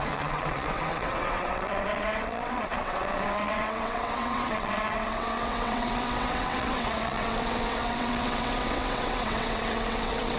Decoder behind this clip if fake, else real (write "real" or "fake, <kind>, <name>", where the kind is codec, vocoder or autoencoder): fake, vocoder, WaveNeXt